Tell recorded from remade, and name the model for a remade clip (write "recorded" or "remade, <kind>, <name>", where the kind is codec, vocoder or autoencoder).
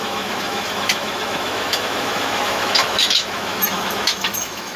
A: remade, autoencoder, DAC-VAE